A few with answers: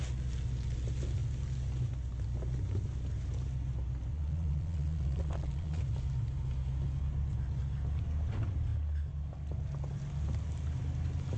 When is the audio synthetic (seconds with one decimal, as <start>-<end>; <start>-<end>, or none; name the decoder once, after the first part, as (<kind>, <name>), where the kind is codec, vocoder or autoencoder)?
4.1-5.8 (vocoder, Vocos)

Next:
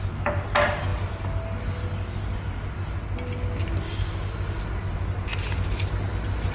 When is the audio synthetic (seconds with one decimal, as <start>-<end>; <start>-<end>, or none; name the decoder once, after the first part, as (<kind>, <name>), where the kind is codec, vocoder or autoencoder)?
none

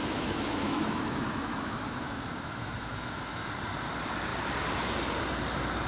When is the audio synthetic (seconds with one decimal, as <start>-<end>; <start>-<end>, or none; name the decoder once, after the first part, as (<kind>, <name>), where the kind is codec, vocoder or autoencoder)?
0.0-3.5 (autoencoder, DAC-VAE)

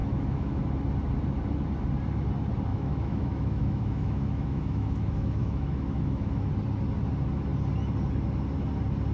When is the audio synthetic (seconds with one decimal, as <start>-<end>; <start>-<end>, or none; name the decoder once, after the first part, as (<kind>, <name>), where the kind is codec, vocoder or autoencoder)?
0.0-0.6 (autoencoder, DAC-VAE); 2.7-6.5

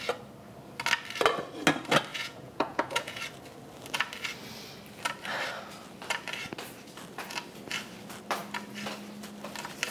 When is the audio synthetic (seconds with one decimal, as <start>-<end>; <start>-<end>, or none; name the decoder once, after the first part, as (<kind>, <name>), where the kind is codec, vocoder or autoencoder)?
2.1-3.2 (vocoder, Vocos)

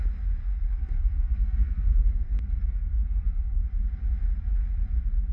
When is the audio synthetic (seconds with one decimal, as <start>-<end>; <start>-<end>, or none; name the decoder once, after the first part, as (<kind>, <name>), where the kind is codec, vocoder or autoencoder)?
0.4-3.6 (codec, SNAC)

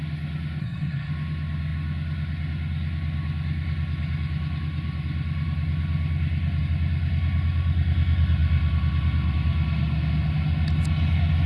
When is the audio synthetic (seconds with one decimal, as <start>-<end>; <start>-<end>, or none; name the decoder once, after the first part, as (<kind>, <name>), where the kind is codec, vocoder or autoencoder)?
0.6-1.1 (codec, SNAC)